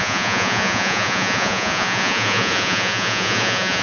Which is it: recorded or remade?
remade